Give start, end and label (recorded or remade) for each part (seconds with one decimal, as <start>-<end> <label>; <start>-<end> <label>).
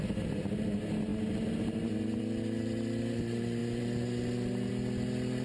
0.0-5.4 recorded